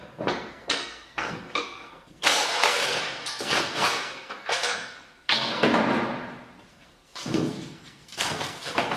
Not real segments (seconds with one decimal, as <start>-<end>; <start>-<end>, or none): 0.0-5.7; 6.7-9.0